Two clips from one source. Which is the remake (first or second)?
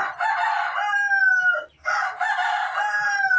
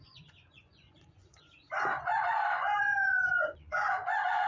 second